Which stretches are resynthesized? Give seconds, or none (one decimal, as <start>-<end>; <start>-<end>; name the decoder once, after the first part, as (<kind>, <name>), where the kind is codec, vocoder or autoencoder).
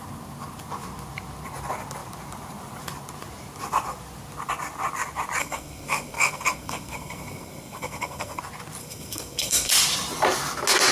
5.4-8.4 (codec, SNAC); 8.8-9.7